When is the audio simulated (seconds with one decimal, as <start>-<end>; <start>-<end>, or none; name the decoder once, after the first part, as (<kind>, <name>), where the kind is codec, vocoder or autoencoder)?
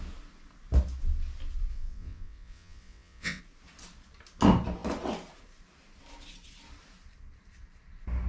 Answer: 1.7-3.4 (vocoder, WaveNeXt)